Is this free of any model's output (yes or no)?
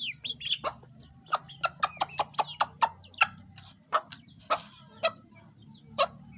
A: yes